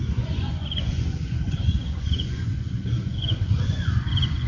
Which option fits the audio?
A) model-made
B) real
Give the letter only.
A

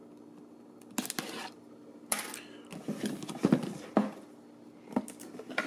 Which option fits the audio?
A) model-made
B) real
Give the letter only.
B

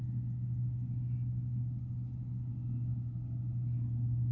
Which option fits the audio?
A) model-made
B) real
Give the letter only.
B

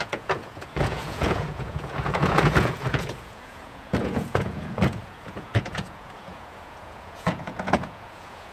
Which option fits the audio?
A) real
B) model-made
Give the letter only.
B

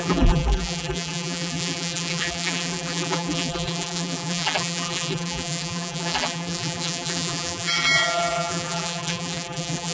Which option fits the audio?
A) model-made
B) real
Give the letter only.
A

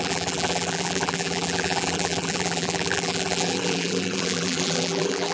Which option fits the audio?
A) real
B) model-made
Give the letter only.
B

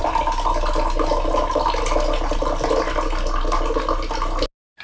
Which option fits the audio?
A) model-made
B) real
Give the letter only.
B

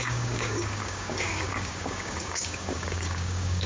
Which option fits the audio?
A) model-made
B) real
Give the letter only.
A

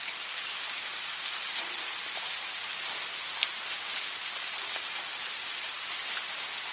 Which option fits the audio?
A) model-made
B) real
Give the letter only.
B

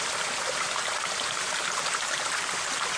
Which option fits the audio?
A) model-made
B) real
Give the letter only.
B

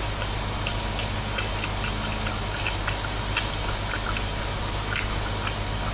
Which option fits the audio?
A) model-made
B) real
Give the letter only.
B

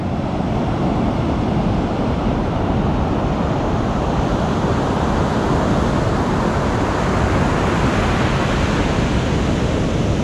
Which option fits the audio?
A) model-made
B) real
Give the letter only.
B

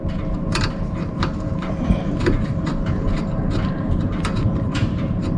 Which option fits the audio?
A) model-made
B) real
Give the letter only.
A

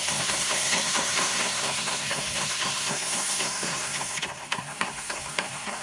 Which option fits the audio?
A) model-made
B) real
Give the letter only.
A